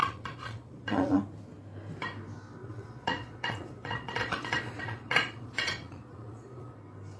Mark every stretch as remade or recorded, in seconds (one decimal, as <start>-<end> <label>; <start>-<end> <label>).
0.0-1.2 remade; 1.2-2.6 recorded; 2.6-6.8 remade; 6.8-7.2 recorded